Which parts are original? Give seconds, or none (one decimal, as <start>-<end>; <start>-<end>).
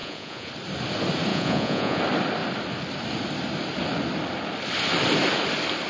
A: 0.5-1.3; 2.0-5.9